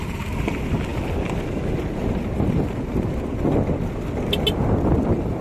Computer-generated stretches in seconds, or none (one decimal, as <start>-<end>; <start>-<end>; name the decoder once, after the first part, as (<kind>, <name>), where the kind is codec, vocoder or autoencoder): none